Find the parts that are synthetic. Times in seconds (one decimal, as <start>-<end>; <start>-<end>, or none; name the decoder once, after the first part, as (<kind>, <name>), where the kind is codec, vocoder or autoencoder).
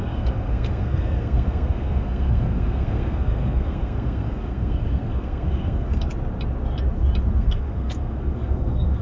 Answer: 0.0-6.1 (codec, SNAC); 7.3-9.0